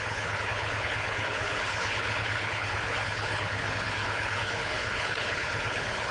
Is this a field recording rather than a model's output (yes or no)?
no